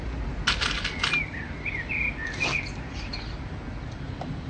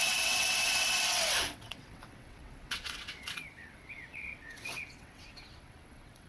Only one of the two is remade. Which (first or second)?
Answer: second